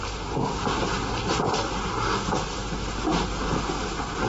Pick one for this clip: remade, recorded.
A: recorded